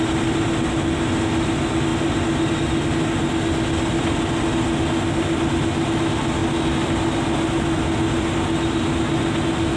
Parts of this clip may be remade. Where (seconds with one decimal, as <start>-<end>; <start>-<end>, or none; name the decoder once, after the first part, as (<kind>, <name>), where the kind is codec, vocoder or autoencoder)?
none